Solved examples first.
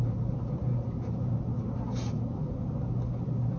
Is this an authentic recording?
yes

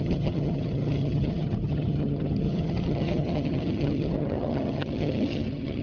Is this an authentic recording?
no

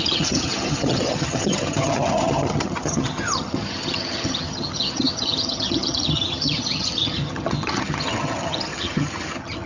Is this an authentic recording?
no